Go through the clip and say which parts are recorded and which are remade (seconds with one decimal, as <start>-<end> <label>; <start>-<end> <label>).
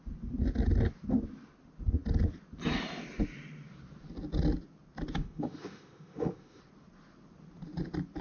0.0-5.2 recorded; 5.2-6.6 remade; 6.6-8.2 recorded